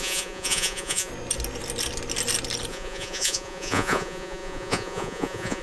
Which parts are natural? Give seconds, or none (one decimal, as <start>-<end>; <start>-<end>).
1.1-2.7